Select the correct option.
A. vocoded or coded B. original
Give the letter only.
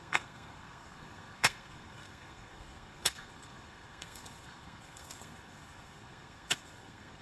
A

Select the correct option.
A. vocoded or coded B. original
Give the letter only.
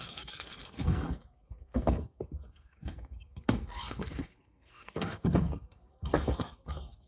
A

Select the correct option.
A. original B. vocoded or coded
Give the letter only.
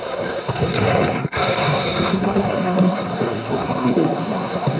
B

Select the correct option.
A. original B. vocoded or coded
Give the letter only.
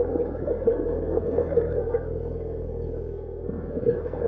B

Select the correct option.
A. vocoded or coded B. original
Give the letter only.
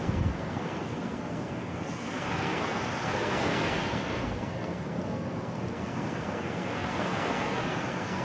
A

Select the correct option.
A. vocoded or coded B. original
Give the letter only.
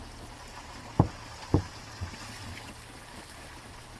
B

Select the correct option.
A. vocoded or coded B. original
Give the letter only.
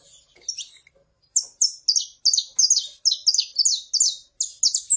B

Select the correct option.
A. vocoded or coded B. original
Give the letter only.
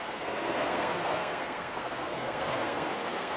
A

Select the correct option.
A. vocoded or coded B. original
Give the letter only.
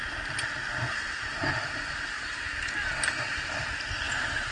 B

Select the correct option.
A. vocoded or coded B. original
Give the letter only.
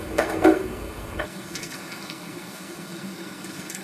A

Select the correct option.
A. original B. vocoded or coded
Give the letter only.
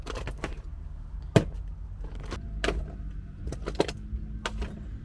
A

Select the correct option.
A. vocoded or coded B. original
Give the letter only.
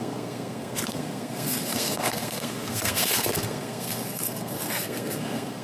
A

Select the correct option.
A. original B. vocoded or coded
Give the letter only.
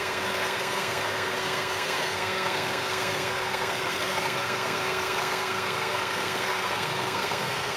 B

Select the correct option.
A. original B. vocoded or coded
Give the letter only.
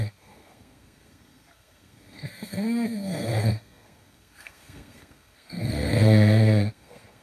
B